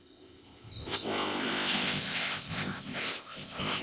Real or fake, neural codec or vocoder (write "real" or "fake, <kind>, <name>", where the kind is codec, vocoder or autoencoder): fake, codec, ZipCodec